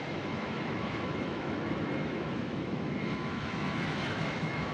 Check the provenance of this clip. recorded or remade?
remade